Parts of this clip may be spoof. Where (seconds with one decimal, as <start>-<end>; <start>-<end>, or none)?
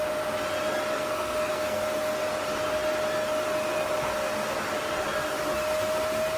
0.9-1.8